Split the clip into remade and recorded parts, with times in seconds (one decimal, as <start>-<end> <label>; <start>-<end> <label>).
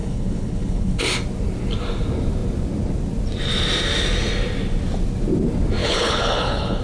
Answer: 0.0-1.0 remade; 1.0-5.8 recorded; 5.8-6.8 remade